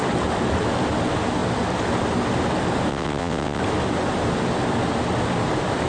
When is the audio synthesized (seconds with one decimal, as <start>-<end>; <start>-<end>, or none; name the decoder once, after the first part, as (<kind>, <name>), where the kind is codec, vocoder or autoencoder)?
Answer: 2.9-3.6 (vocoder, WaveNeXt)